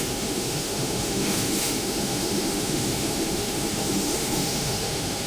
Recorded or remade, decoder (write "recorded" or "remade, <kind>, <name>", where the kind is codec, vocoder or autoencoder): remade, autoencoder, DAC-VAE